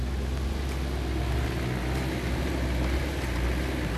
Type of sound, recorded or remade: recorded